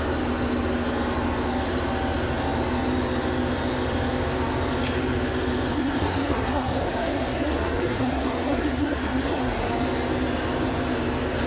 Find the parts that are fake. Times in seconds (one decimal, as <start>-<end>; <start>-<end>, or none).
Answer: 5.7-9.7